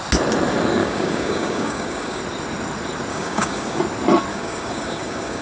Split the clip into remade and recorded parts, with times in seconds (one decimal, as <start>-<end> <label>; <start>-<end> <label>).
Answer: 0.0-0.8 recorded; 0.8-2.2 remade; 2.2-3.1 recorded; 3.1-3.8 remade; 3.8-4.3 recorded; 4.3-5.4 remade